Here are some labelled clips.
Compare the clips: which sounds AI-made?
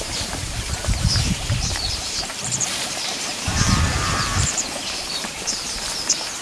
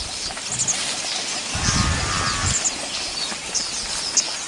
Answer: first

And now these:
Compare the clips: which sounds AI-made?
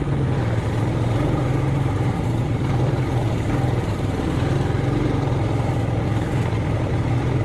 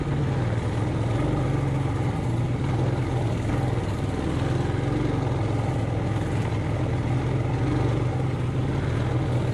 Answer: first